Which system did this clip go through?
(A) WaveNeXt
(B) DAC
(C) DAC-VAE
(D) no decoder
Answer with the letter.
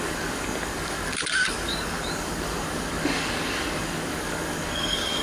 B